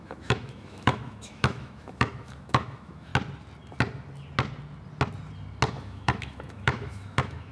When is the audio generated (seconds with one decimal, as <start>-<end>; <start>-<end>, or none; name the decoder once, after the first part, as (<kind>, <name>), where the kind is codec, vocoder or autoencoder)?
0.0-3.1 (autoencoder, DAC-VAE); 5.7-7.5